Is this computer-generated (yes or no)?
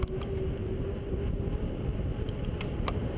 no